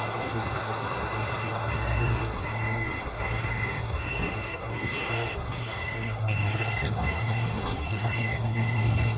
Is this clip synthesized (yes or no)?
yes